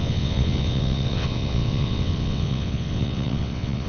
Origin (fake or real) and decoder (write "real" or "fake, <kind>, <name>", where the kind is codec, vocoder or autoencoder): fake, vocoder, WaveNeXt